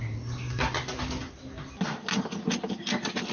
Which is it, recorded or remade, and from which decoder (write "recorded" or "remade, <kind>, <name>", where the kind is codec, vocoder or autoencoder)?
recorded